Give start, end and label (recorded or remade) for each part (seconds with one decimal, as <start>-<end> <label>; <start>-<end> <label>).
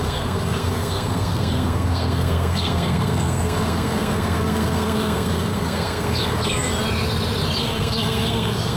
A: 0.0-6.7 remade; 6.7-7.6 recorded; 7.6-8.8 remade